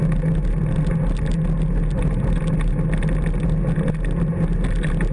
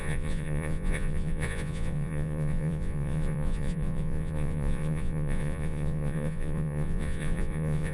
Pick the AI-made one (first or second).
second